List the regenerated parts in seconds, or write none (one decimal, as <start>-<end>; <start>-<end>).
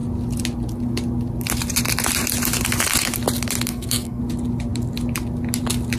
3.7-4.2